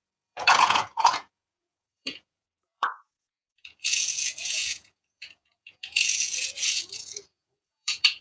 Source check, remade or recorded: remade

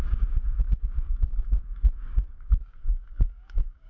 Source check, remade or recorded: remade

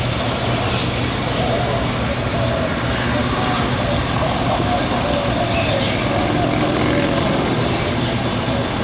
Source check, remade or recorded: recorded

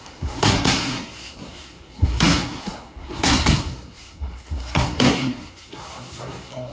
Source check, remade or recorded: remade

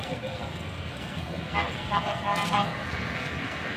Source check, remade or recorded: remade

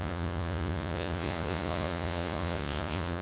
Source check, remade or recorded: remade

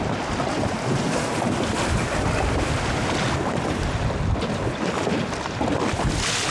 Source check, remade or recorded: recorded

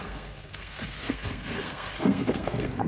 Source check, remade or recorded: remade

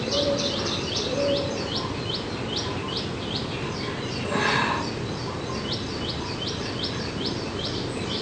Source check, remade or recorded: remade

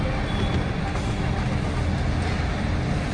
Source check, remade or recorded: recorded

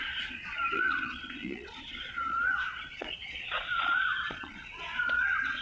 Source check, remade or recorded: remade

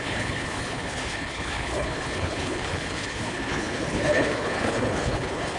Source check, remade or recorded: remade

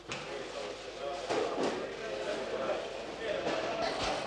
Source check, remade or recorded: recorded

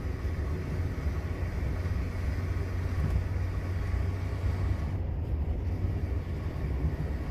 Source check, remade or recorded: recorded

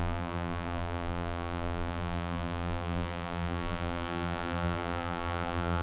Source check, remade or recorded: remade